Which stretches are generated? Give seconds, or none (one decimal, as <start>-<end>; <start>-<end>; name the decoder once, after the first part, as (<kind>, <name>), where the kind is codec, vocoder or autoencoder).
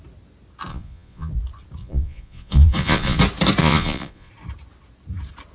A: 0.7-1.3 (vocoder, Vocos); 1.8-3.2; 3.6-4.3